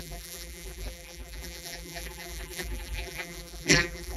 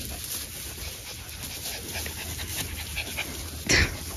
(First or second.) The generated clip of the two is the first